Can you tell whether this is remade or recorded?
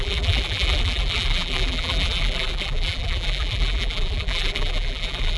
remade